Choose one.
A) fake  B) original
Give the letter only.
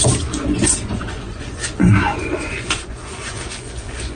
A